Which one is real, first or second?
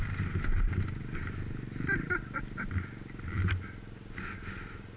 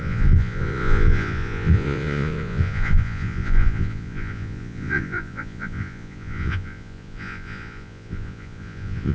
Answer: first